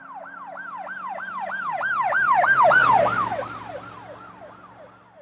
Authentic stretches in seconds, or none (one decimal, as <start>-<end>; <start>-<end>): 0.0-5.2